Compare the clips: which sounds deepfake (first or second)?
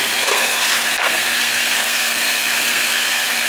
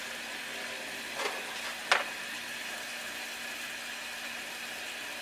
first